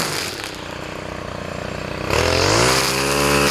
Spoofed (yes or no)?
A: no